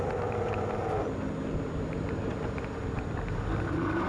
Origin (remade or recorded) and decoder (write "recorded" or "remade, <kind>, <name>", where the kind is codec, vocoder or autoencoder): recorded